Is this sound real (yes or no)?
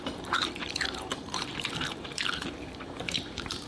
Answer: no